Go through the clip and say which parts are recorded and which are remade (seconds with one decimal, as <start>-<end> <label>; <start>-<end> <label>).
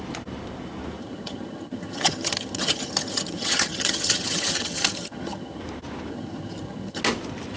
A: 0.0-1.0 recorded; 1.0-5.6 remade; 5.6-6.1 recorded; 6.1-7.0 remade; 7.0-7.6 recorded